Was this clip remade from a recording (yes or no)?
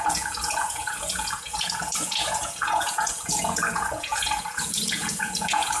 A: yes